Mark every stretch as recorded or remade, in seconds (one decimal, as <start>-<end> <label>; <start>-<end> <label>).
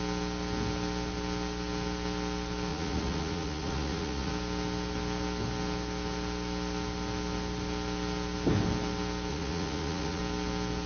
0.0-2.7 recorded; 2.7-4.3 remade; 4.3-9.3 recorded; 9.3-10.2 remade; 10.2-10.9 recorded